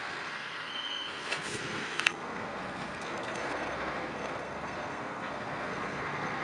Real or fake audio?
fake